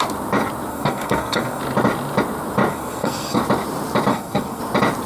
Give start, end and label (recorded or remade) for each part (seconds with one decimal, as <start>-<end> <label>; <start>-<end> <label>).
0.0-0.7 recorded; 0.7-1.6 remade; 1.6-2.7 recorded; 2.7-3.4 remade; 3.4-4.1 recorded; 4.1-4.6 remade; 4.6-5.1 recorded